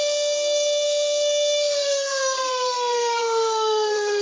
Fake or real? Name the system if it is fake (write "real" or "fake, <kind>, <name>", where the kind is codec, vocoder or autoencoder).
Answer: fake, codec, SNAC